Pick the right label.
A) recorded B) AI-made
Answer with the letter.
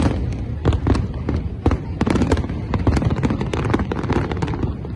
A